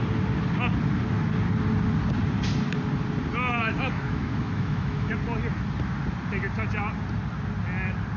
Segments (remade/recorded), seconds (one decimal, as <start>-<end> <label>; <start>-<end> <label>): 0.0-3.6 recorded; 3.6-5.1 remade; 5.1-8.2 recorded